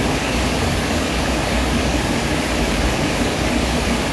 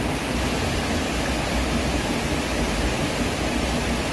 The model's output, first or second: first